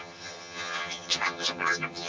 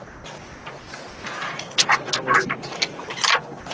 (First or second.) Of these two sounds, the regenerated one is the first